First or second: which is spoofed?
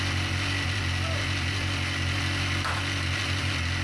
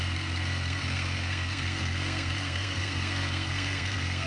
second